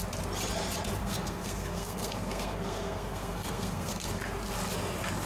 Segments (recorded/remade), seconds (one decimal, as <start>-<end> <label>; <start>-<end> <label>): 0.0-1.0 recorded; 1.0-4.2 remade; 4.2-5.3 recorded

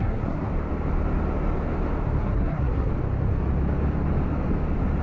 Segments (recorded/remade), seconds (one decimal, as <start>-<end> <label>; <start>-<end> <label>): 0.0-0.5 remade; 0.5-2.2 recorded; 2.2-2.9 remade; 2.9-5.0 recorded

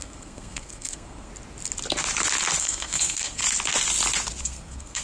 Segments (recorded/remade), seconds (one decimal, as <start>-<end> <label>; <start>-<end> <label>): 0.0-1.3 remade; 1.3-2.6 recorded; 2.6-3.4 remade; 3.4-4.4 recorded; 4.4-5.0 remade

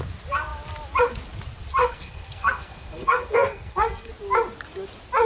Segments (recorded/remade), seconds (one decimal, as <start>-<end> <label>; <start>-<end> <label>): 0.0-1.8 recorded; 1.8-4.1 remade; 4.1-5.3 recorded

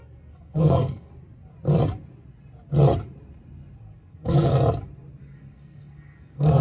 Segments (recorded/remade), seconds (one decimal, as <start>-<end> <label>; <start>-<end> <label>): 0.0-1.1 remade; 1.1-3.8 recorded; 3.8-4.5 remade; 4.5-5.2 recorded; 5.2-6.6 remade

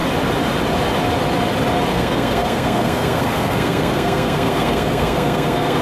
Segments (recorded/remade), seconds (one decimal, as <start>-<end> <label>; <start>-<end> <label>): 0.0-1.9 recorded; 1.9-5.8 remade

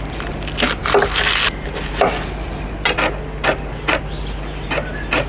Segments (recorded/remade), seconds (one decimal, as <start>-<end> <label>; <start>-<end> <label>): 0.0-5.3 recorded